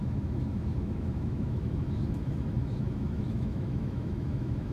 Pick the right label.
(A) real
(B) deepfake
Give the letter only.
B